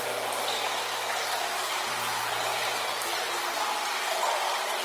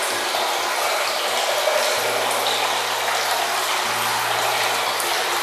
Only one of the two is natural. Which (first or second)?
second